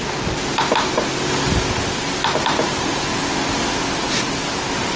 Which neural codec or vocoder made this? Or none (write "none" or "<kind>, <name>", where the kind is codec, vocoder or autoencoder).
none